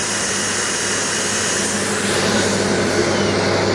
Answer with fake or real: real